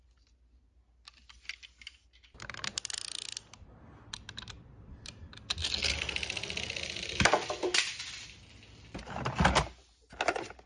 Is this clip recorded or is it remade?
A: recorded